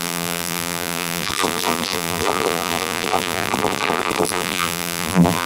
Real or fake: fake